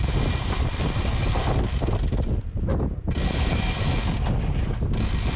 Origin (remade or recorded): recorded